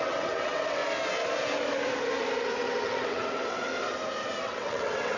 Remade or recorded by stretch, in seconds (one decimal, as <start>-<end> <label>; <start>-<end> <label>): 0.0-0.8 remade; 0.8-2.6 recorded; 2.6-3.7 remade; 3.7-4.4 recorded; 4.4-5.2 remade